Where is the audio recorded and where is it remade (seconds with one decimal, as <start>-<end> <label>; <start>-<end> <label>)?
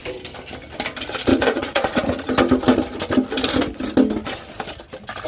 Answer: 0.0-1.3 recorded; 1.3-2.3 remade; 2.3-5.3 recorded